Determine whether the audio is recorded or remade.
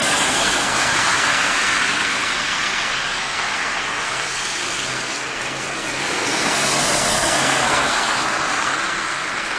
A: remade